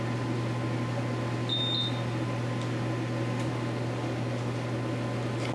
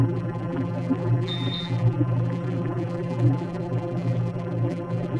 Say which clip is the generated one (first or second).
second